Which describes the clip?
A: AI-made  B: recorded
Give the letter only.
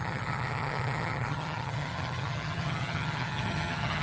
A